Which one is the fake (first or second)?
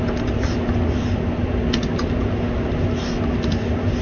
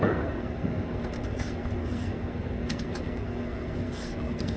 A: second